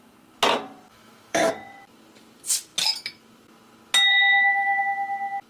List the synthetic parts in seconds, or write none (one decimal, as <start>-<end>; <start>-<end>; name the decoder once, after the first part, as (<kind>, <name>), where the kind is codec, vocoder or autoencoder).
0.9-1.5 (autoencoder, DAC-VAE); 4.1-4.8